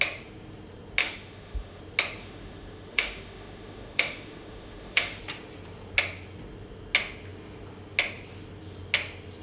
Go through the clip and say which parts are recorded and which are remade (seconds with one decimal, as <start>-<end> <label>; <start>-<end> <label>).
0.0-1.0 recorded; 1.0-1.8 remade; 1.8-2.2 recorded; 2.2-5.2 remade; 5.2-9.4 recorded